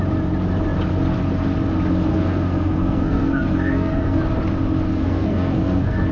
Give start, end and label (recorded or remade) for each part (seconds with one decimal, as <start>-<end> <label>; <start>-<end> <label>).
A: 0.0-2.1 recorded; 2.1-4.2 remade; 4.2-4.9 recorded; 4.9-6.1 remade